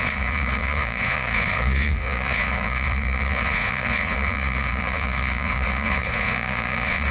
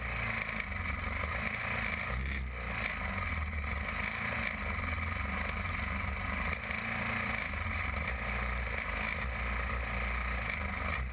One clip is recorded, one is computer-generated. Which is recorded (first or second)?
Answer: second